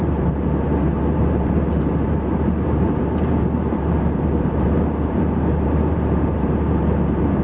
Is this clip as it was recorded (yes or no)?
no